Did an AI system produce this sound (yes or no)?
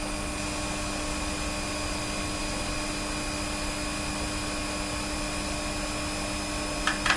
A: no